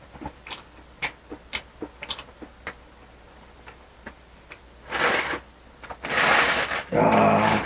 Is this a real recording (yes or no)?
yes